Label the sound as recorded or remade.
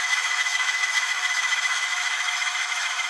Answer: remade